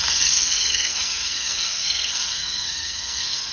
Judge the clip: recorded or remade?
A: remade